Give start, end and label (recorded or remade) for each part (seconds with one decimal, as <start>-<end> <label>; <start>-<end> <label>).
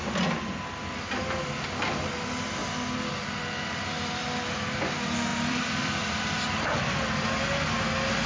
0.0-5.3 recorded; 5.3-6.6 remade; 6.6-8.3 recorded